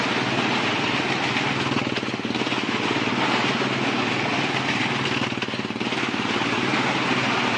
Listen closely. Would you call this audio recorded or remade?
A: recorded